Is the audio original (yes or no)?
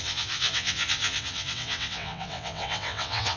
no